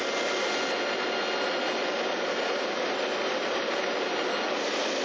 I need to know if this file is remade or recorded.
recorded